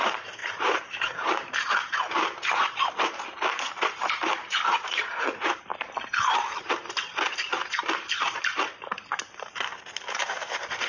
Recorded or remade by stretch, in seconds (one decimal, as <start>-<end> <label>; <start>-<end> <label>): 0.0-5.7 remade; 5.7-6.2 recorded; 6.2-10.9 remade